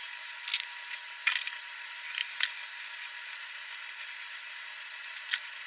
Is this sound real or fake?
real